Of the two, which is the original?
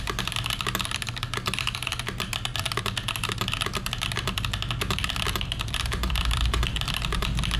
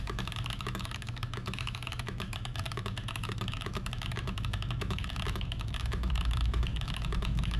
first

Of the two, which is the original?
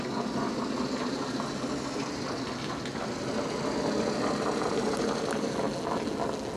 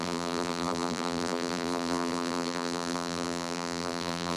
first